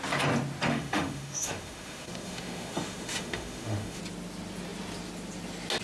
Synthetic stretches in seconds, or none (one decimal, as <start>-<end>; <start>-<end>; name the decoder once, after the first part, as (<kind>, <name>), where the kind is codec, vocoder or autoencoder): 0.7-4.0 (autoencoder, DAC-VAE)